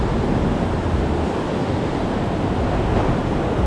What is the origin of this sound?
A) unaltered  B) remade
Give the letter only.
A